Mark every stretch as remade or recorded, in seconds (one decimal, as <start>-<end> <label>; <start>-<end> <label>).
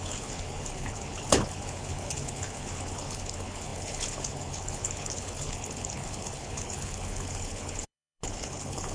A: 0.0-8.9 remade